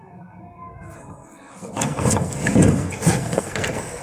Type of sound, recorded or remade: remade